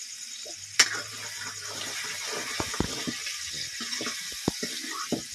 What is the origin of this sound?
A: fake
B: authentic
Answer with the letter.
B